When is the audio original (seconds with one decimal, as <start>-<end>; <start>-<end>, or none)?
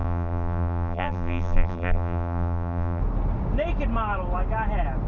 3.0-5.1